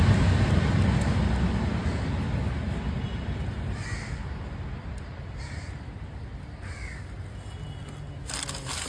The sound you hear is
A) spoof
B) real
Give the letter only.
B